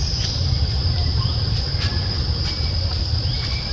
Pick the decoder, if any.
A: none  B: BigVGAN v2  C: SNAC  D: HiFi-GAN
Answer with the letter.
B